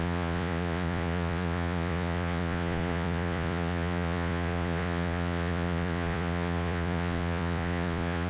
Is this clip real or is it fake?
fake